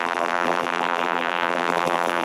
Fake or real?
fake